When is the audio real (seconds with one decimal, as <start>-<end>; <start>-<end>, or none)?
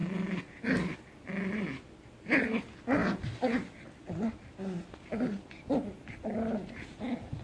0.0-7.4